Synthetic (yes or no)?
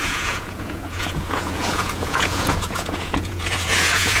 yes